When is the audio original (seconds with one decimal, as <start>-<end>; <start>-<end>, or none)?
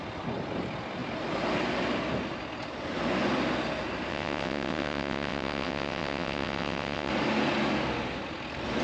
0.0-4.1; 7.1-8.8